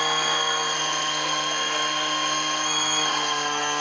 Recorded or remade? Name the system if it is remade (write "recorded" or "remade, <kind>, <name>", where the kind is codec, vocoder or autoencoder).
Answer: remade, codec, SNAC